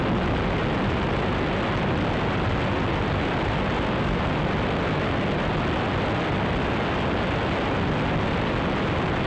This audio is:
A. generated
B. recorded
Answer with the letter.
B